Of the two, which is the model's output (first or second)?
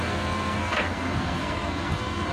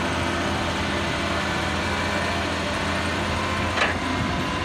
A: first